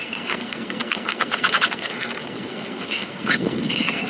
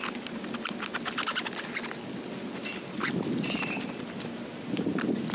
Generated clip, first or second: first